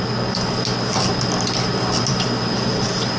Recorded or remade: recorded